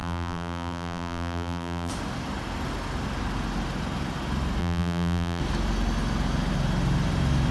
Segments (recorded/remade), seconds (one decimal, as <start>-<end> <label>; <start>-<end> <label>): 0.0-1.9 remade; 1.9-4.6 recorded; 4.6-5.4 remade; 5.4-7.5 recorded